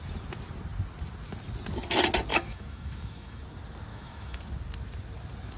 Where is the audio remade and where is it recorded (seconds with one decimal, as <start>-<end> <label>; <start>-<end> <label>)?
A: 0.0-2.3 recorded; 2.3-3.4 remade; 3.4-3.9 recorded; 3.9-4.4 remade; 4.4-5.6 recorded